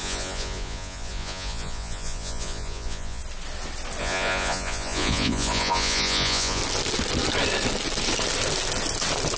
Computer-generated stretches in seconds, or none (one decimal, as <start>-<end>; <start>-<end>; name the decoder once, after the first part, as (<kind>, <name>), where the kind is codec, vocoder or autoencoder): 0.0-3.2 (vocoder, Vocos); 4.0-6.6